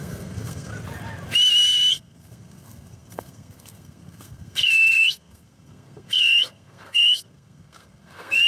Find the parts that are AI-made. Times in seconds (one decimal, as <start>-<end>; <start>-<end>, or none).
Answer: 0.0-0.7; 1.9-8.5